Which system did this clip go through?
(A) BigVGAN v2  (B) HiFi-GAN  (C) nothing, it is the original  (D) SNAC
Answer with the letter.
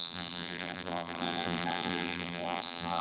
A